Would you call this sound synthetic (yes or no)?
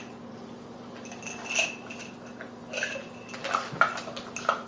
no